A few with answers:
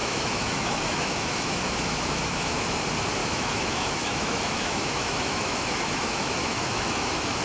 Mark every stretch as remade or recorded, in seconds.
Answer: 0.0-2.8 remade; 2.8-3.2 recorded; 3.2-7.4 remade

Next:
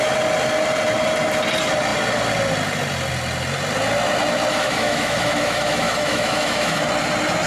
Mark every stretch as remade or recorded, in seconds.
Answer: 0.0-4.5 recorded; 4.5-6.8 remade; 6.8-7.5 recorded

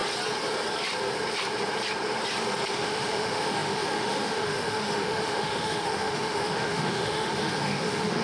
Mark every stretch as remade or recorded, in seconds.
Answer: 0.0-2.7 recorded; 2.7-8.2 remade